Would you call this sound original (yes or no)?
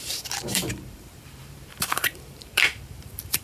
no